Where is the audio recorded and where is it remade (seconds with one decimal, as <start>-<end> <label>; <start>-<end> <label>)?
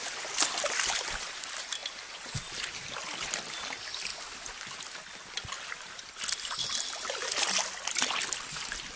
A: 0.0-9.0 recorded